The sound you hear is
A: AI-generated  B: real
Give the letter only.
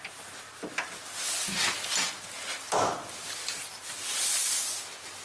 B